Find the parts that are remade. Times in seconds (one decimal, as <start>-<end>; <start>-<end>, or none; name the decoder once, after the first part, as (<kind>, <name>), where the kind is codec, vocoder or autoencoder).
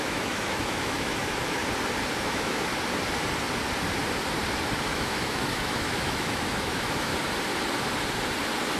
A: 0.0-1.6 (autoencoder, DAC-VAE); 2.2-2.7; 4.8-7.1